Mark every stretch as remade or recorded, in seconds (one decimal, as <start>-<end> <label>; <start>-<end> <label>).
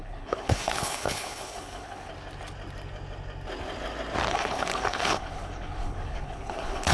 0.0-2.1 remade; 2.1-4.3 recorded; 4.3-6.9 remade